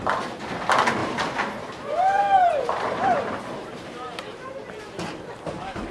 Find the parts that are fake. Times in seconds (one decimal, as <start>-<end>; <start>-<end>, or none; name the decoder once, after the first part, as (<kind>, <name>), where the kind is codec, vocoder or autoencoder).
1.0-4.5 (vocoder, BigVGAN v2)